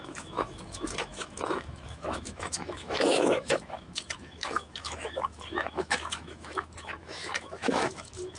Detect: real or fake fake